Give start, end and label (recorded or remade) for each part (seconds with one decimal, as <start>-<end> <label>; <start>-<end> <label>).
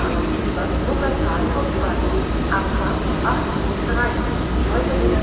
0.0-4.6 recorded; 4.6-5.2 remade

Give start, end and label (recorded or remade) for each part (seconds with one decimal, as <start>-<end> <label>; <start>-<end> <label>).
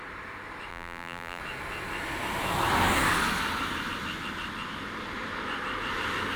0.0-0.7 recorded; 0.7-1.4 remade; 1.4-6.4 recorded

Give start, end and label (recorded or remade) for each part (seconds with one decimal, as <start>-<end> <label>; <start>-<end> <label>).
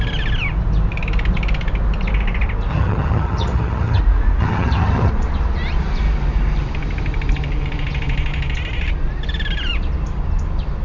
0.0-2.7 recorded; 2.7-4.0 remade; 4.0-4.4 recorded; 4.4-5.1 remade; 5.1-10.8 recorded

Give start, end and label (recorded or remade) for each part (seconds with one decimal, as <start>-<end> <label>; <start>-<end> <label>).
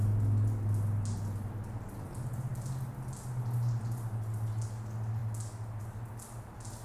0.0-6.8 recorded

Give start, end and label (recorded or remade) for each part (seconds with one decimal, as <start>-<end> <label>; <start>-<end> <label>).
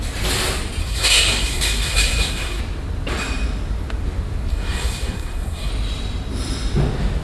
0.0-0.8 recorded; 0.8-2.6 remade; 2.6-4.5 recorded; 4.5-5.7 remade; 5.7-7.2 recorded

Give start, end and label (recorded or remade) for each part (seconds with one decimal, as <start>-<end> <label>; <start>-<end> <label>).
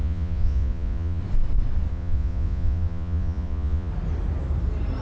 0.0-1.2 remade; 1.2-1.9 recorded; 1.9-3.9 remade; 3.9-5.0 recorded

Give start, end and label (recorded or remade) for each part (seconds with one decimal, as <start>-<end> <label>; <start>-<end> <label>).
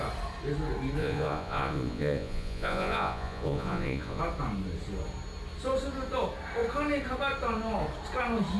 0.0-1.0 recorded; 1.0-4.2 remade; 4.2-8.6 recorded